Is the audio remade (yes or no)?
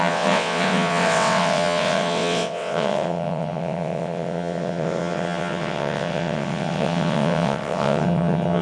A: yes